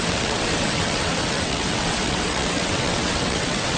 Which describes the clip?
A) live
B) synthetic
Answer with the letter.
B